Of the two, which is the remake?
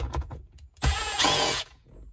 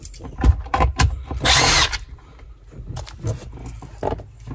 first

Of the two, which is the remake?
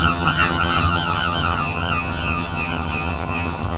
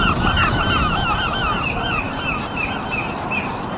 first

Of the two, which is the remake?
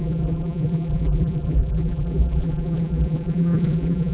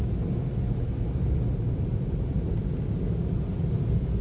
first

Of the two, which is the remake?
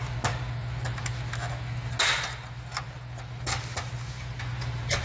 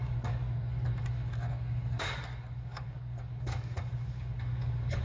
second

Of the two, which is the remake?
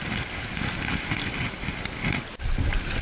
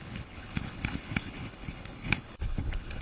second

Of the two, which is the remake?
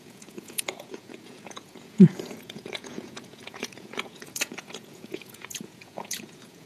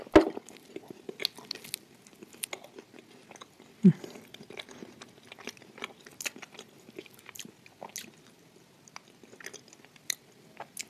first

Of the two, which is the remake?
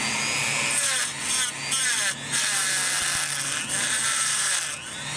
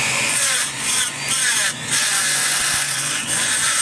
second